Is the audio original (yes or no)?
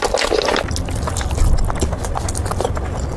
yes